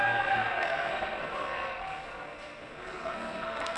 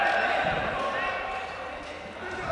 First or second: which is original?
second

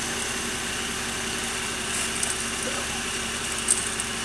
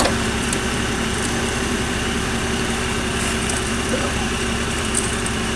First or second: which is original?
first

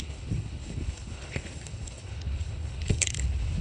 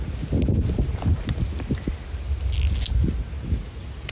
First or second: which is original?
second